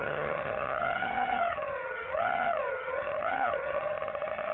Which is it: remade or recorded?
remade